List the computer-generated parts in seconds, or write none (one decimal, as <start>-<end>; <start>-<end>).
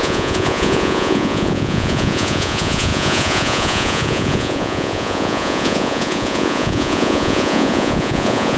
0.0-8.6